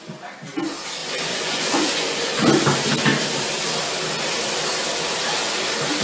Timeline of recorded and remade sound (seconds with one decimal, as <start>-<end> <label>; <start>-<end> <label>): 0.0-1.0 recorded; 1.0-2.4 remade; 2.4-6.0 recorded